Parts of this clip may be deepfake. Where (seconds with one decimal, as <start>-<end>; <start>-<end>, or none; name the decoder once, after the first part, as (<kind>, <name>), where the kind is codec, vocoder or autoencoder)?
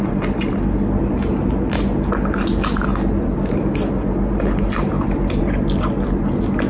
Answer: none